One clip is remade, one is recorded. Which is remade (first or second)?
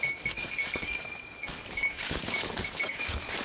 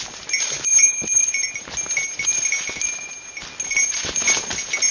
first